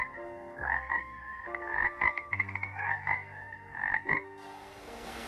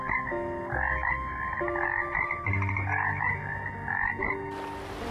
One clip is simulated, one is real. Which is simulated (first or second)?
first